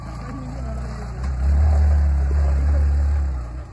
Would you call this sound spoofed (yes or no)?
no